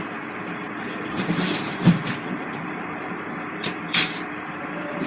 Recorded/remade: remade